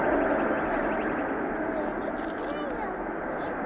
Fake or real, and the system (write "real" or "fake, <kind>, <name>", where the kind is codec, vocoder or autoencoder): real